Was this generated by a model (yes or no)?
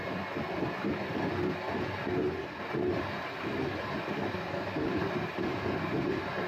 no